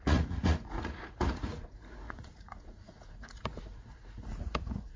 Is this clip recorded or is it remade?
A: remade